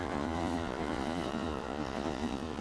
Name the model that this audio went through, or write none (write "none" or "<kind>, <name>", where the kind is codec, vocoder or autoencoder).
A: vocoder, Vocos